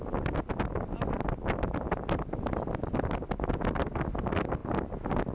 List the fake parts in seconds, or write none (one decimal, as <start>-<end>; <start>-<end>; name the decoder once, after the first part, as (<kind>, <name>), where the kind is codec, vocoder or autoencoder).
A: none